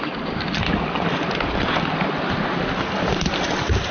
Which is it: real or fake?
real